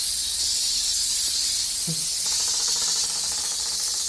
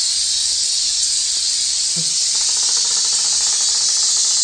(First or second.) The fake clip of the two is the second